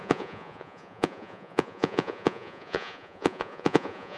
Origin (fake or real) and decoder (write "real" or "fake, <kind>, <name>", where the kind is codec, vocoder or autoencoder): fake, vocoder, Vocos